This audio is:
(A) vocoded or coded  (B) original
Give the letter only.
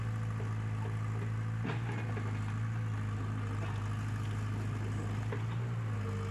B